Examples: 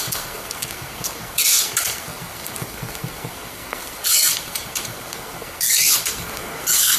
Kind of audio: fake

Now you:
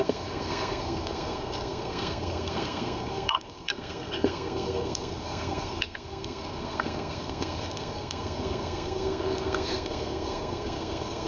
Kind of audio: fake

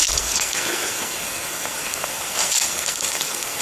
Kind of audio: fake